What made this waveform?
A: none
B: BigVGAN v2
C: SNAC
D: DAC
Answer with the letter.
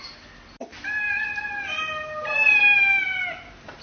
A